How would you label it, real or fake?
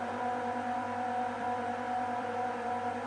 fake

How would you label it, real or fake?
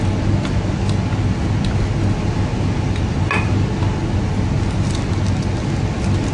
real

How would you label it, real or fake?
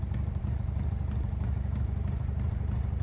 fake